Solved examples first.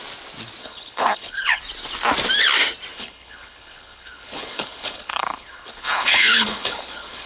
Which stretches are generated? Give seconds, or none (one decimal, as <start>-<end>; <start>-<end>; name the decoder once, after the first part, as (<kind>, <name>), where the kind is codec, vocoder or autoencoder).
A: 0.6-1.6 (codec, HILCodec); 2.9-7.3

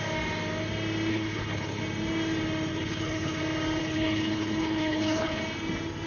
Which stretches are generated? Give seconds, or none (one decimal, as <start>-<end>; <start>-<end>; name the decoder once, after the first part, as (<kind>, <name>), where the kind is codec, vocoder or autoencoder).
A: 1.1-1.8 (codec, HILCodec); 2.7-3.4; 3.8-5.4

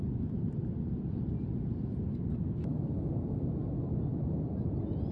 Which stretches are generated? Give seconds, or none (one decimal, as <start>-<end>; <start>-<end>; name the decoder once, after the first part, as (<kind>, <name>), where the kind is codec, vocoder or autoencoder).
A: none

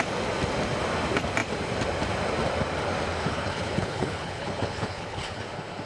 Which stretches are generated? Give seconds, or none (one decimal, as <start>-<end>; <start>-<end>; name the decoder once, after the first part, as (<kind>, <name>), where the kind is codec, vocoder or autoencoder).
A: 3.2-5.4 (codec, HILCodec)

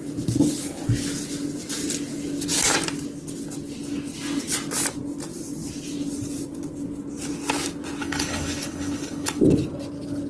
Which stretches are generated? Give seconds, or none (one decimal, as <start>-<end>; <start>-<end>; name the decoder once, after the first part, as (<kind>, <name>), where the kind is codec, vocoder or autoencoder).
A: 8.0-9.4 (codec, HILCodec)

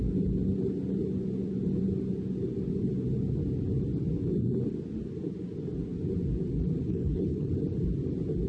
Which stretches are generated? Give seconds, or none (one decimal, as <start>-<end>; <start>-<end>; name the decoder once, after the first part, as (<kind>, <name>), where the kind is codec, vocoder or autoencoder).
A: 6.9-7.5 (codec, HILCodec)

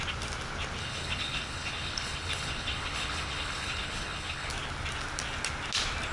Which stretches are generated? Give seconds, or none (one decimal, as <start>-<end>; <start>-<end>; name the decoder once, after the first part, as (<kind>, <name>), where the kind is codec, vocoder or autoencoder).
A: 0.8-4.5 (codec, HILCodec)

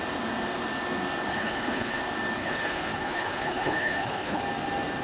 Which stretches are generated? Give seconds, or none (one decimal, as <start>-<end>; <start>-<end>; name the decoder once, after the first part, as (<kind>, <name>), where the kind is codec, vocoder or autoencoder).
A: 1.3-2.0 (codec, HILCodec); 2.4-4.4